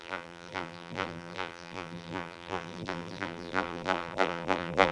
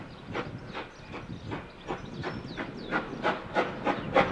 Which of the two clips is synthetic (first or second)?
first